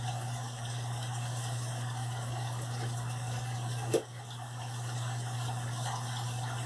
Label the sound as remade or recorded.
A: remade